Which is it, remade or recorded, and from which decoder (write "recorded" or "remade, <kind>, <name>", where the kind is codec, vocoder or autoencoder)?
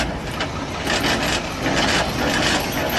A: recorded